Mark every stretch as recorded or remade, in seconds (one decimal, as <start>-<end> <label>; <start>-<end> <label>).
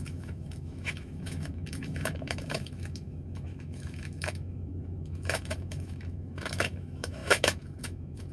0.0-8.3 remade